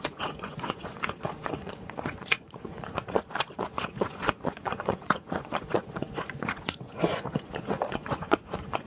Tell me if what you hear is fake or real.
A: fake